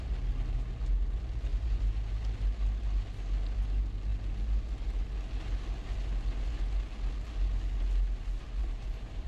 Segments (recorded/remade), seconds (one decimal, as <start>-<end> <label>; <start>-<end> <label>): 0.0-1.5 recorded; 1.5-2.1 remade; 2.1-8.6 recorded; 8.6-9.3 remade